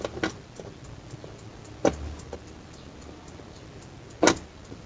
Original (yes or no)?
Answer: yes